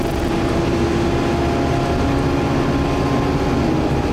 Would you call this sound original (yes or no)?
yes